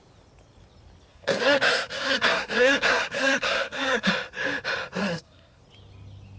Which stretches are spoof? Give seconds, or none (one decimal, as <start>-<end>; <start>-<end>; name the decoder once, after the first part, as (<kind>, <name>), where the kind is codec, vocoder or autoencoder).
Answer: 1.1-4.1 (codec, SNAC); 5.0-5.6